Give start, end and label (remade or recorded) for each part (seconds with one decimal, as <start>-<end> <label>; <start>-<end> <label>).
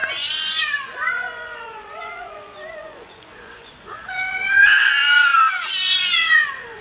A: 0.0-6.8 remade